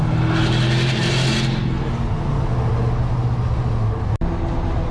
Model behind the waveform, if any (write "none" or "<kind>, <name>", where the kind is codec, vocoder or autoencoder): none